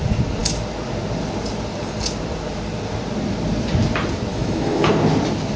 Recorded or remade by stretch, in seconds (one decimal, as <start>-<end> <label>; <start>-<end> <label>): 0.0-4.3 recorded; 4.3-4.9 remade; 4.9-5.6 recorded